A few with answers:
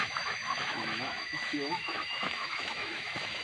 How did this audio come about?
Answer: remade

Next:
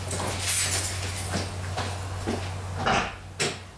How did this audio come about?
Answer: recorded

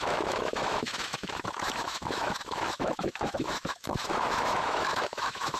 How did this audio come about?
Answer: remade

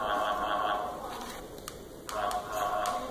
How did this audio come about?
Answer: recorded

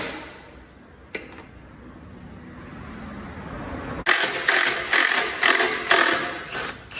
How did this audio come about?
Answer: recorded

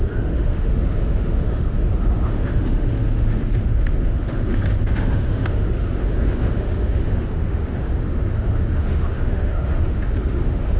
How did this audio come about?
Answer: remade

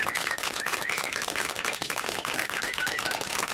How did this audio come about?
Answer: remade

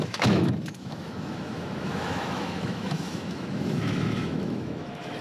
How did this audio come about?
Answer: remade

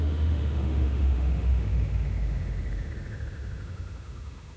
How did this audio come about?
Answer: remade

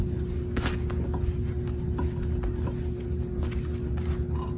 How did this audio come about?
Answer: recorded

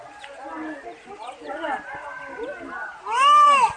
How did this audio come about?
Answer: recorded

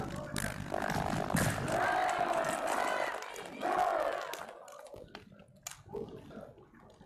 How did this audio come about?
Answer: recorded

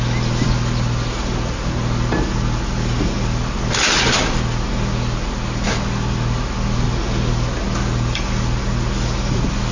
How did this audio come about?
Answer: recorded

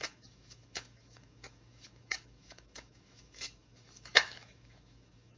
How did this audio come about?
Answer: remade